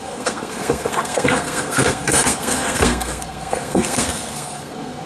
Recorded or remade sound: remade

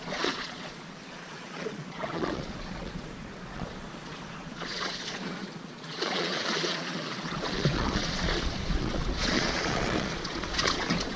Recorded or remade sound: remade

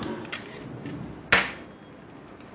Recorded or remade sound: recorded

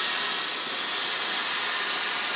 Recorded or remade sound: recorded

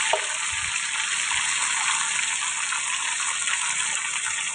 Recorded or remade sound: recorded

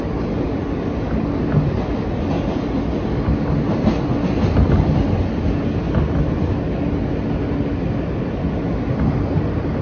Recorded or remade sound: recorded